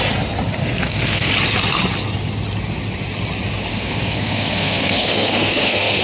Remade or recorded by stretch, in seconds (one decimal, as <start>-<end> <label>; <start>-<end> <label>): 0.0-0.6 recorded; 0.6-1.3 remade; 1.3-3.7 recorded; 3.7-6.0 remade